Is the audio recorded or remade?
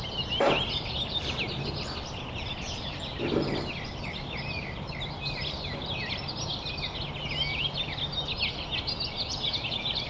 recorded